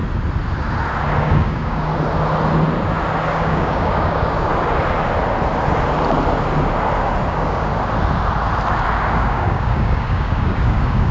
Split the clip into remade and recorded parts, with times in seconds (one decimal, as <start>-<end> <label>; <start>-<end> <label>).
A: 0.0-1.2 recorded; 1.2-1.9 remade; 1.9-3.3 recorded; 3.3-4.5 remade; 4.5-7.3 recorded; 7.3-7.7 remade; 7.7-9.1 recorded; 9.1-11.1 remade